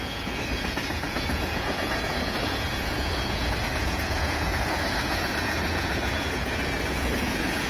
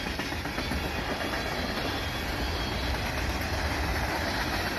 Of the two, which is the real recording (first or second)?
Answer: second